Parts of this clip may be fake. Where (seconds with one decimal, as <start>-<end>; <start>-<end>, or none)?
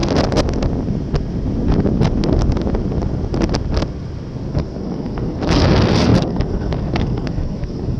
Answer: 4.5-8.0